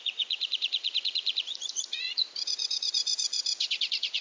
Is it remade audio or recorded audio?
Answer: remade